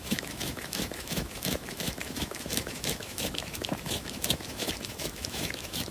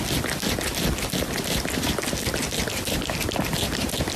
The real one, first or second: second